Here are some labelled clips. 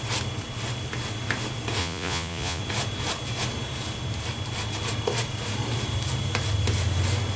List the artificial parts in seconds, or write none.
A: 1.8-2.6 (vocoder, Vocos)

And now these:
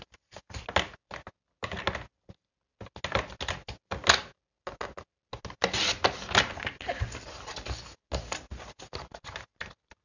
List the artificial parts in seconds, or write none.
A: none

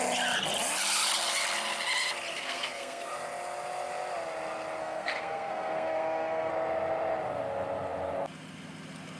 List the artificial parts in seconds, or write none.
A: 2.3-3.1 (codec, SNAC); 4.8-6.5

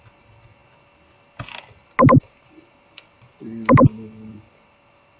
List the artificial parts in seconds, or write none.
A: none

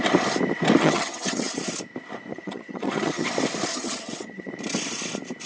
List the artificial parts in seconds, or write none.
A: 0.8-1.6 (vocoder, HiFi-GAN); 2.3-3.3; 3.7-4.5

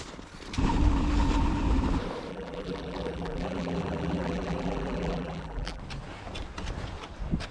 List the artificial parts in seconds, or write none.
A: 2.3-5.8 (vocoder, BigVGAN v2)